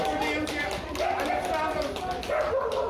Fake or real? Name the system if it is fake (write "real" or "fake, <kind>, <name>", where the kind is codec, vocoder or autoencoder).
real